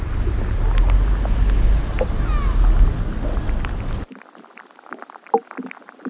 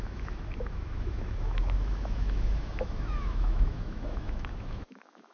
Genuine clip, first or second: first